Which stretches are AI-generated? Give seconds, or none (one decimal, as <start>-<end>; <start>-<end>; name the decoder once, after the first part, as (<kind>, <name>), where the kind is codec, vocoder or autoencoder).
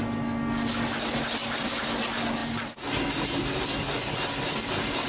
none